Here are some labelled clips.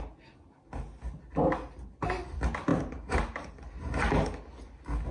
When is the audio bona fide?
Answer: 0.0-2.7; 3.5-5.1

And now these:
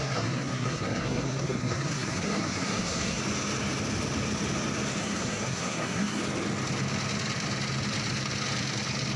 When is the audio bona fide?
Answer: 3.2-5.0; 6.2-9.2